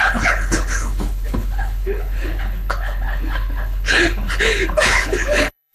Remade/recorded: remade